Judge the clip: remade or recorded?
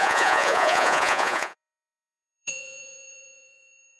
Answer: remade